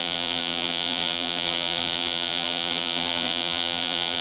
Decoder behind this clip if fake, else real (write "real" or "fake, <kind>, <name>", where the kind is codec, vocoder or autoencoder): fake, vocoder, BigVGAN v2